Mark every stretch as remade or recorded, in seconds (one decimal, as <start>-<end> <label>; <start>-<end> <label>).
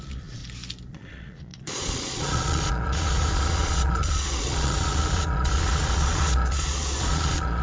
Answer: 0.0-0.4 remade; 0.4-0.9 recorded; 0.9-7.6 remade